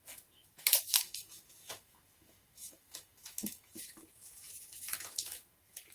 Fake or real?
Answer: fake